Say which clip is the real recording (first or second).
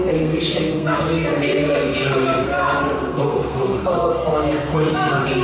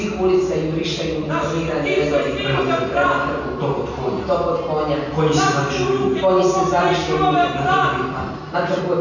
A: second